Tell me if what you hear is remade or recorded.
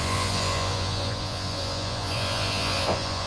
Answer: remade